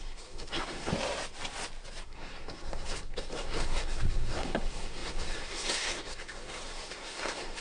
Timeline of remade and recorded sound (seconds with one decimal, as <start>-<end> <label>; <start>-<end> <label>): 0.0-0.9 remade; 0.9-2.0 recorded; 2.0-7.6 remade